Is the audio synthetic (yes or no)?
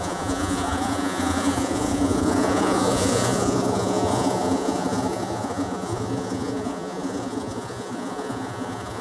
yes